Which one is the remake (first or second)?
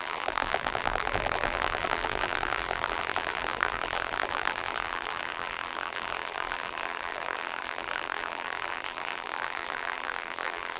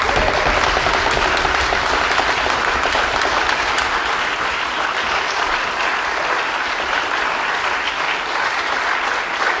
first